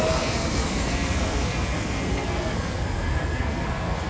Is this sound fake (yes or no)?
yes